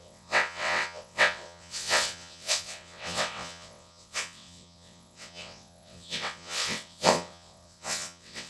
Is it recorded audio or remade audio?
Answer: remade